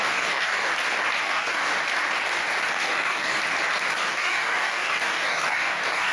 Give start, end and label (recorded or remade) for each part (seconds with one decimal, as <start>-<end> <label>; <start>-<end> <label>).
0.0-0.7 remade; 0.7-1.2 recorded; 1.2-1.6 remade; 1.6-2.7 recorded; 2.7-3.4 remade; 3.4-3.9 recorded; 3.9-6.1 remade